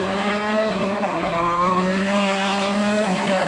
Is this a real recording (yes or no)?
no